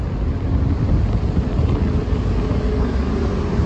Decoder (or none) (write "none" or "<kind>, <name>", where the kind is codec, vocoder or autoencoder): none